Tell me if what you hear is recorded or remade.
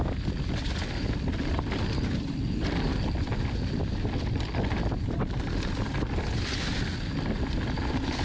recorded